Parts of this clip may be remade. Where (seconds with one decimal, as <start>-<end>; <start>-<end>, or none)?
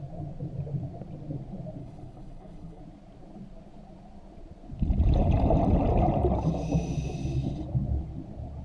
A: 1.8-2.8